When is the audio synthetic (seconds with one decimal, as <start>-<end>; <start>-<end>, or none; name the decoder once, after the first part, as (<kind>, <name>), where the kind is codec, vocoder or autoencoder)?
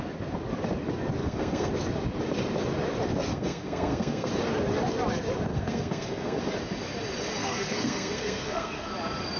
1.2-1.7 (codec, SNAC); 3.3-4.3; 5.5-6.4; 7.4-8.9